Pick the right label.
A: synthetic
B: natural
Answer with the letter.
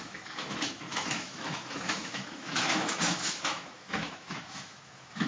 A